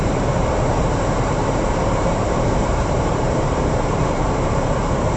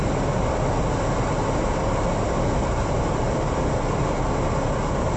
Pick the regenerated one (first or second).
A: first